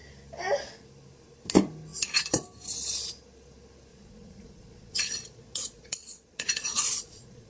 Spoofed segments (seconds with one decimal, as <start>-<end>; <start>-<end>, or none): 3.9-7.5